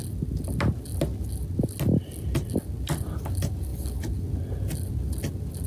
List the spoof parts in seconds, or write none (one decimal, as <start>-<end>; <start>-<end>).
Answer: none